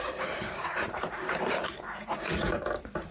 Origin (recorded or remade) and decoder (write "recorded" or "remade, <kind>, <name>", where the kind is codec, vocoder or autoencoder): remade, vocoder, BigVGAN v2